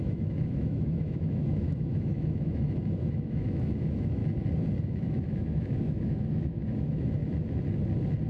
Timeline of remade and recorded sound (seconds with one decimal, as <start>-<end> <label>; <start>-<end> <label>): 0.0-4.2 remade; 4.2-4.8 recorded; 4.8-7.2 remade; 7.2-8.3 recorded